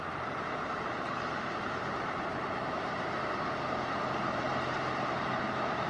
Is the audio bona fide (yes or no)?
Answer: no